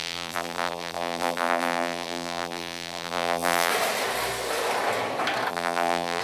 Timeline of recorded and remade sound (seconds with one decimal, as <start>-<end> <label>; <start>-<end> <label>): 0.0-3.7 remade; 3.7-5.5 recorded; 5.5-6.2 remade